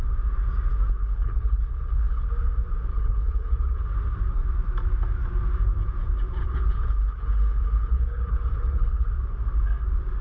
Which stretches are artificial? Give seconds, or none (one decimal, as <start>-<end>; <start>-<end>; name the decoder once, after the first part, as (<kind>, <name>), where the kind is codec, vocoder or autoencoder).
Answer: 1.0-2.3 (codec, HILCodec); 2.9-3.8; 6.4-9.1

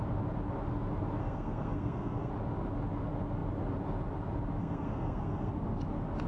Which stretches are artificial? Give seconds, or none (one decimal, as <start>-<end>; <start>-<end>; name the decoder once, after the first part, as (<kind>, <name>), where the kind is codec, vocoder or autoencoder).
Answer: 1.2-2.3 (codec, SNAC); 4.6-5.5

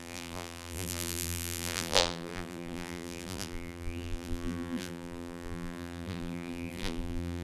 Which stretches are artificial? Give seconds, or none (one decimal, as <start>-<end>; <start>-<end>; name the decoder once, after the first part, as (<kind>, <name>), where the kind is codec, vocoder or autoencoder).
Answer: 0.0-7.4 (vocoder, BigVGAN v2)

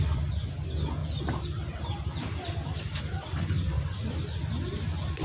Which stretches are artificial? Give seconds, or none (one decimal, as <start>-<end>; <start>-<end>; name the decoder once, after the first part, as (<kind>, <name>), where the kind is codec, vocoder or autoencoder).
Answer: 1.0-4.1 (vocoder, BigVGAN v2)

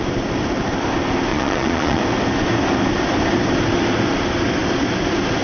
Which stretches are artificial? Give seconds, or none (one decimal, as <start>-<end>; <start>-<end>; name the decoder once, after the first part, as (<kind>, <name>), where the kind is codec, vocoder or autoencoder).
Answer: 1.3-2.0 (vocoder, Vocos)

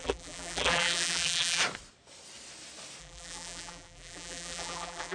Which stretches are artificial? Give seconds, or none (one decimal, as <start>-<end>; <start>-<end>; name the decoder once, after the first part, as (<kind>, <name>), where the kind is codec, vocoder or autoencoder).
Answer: 0.0-1.6 (vocoder, BigVGAN v2); 3.0-5.1